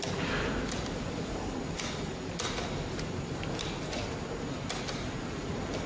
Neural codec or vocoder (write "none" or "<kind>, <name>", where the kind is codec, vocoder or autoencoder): none